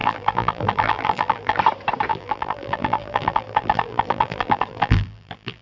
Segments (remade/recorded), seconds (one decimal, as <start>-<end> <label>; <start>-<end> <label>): 0.0-1.6 remade; 1.6-2.1 recorded; 2.1-5.6 remade